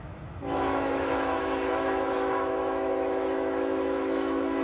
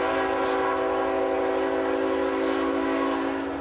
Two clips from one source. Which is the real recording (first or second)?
second